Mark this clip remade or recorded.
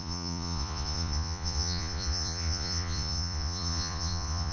remade